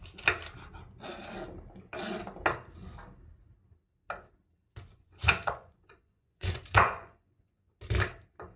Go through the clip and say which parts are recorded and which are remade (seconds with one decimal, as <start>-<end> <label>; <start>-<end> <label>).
0.0-4.9 recorded; 4.9-7.7 remade; 7.7-8.6 recorded

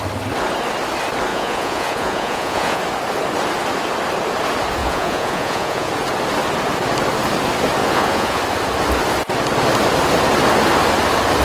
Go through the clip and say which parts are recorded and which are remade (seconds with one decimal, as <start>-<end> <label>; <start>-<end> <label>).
0.0-1.3 recorded; 1.3-2.8 remade; 2.8-4.8 recorded; 4.8-5.9 remade; 5.9-7.8 recorded; 7.8-8.4 remade; 8.4-11.4 recorded

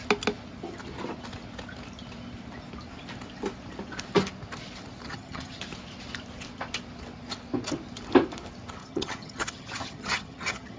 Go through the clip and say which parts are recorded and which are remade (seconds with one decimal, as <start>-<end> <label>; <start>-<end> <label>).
0.0-5.1 recorded; 5.1-5.6 remade; 5.6-8.8 recorded; 8.8-10.8 remade

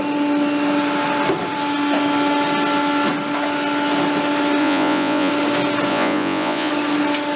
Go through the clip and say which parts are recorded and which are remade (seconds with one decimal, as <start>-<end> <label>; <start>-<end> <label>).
0.0-4.6 recorded; 4.6-5.3 remade; 5.3-5.9 recorded; 5.9-6.7 remade; 6.7-7.4 recorded

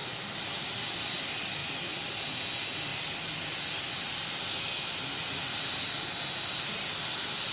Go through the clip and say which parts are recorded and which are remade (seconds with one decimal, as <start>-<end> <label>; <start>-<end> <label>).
0.0-7.5 recorded

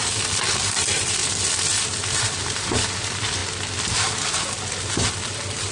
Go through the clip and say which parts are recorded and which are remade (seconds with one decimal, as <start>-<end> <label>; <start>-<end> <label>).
0.0-1.2 remade; 1.2-2.2 recorded; 2.2-3.4 remade; 3.4-5.1 recorded; 5.1-5.7 remade

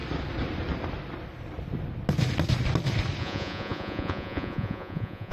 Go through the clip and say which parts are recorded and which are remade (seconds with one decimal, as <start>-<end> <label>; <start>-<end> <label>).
0.0-3.2 recorded; 3.2-5.3 remade

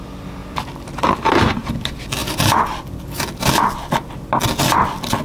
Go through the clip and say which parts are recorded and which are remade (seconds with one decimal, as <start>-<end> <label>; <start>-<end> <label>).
0.0-5.2 recorded